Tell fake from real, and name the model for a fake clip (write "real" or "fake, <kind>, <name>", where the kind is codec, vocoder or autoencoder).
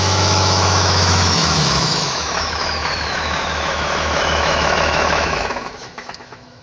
fake, autoencoder, DAC-VAE